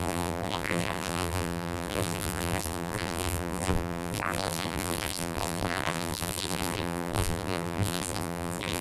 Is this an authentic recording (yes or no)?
no